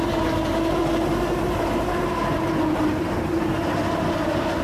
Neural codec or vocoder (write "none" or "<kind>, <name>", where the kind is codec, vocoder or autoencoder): none